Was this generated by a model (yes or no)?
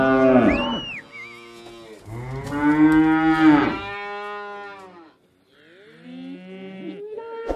no